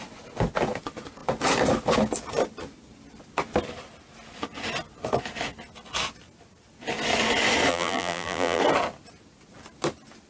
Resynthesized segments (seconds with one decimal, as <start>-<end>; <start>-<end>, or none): 7.7-8.6